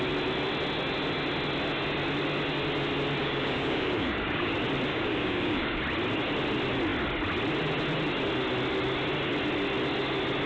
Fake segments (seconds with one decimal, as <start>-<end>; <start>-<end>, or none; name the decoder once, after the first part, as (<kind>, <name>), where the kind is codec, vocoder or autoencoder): 3.2-4.5 (codec, DAC); 4.9-5.8